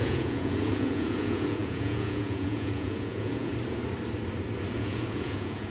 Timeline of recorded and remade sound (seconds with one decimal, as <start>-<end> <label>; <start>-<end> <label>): 0.0-3.5 remade; 3.5-4.7 recorded; 4.7-5.7 remade